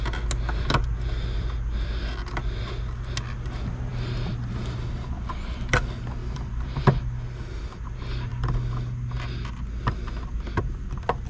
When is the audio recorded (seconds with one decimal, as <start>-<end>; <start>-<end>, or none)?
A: 0.0-6.2; 6.8-11.3